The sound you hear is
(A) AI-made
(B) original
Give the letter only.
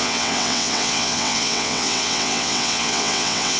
A